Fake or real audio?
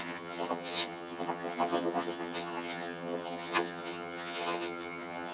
fake